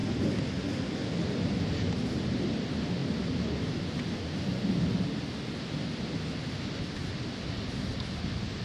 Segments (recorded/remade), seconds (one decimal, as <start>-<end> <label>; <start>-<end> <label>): 0.0-8.6 recorded